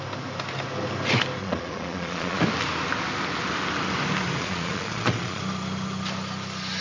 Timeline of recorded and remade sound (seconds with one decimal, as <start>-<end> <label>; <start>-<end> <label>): 0.0-1.4 recorded; 1.4-2.4 remade; 2.4-4.4 recorded; 4.4-5.4 remade; 5.4-6.8 recorded